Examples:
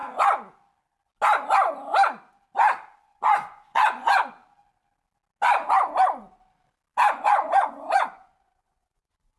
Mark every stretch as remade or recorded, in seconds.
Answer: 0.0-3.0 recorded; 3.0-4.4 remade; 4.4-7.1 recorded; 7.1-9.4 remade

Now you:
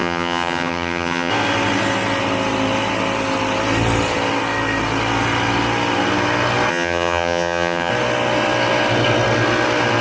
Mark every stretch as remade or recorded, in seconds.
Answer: 0.0-1.3 remade; 1.3-6.7 recorded; 6.7-7.9 remade; 7.9-10.0 recorded

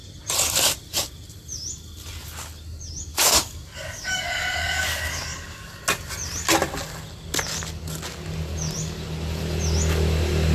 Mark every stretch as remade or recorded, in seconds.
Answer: 0.0-3.1 recorded; 3.1-5.8 remade; 5.8-10.5 recorded

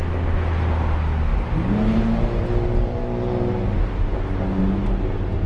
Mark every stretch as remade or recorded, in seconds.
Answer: 0.0-5.5 recorded

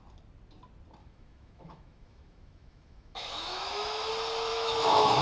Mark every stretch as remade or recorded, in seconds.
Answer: 0.0-1.0 recorded; 1.0-4.1 remade; 4.1-4.5 recorded; 4.5-5.2 remade

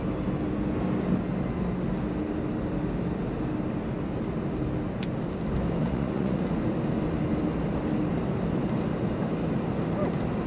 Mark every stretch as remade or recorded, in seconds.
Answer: 0.0-5.8 recorded; 5.8-6.4 remade; 6.4-10.5 recorded

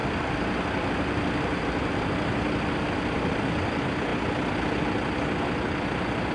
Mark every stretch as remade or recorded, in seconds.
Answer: 0.0-6.3 recorded

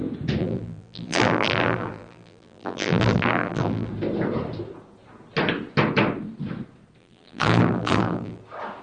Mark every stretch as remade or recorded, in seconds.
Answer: 0.0-0.4 recorded; 0.4-3.9 remade; 3.9-7.0 recorded; 7.0-8.4 remade; 8.4-8.8 recorded